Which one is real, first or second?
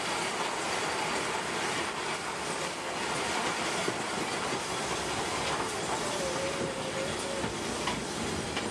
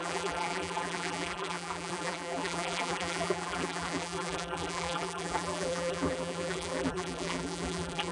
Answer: first